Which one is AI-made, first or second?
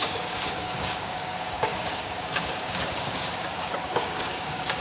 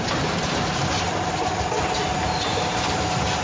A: first